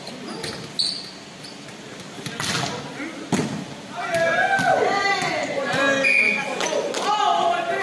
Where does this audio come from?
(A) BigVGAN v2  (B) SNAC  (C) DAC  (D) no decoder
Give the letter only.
D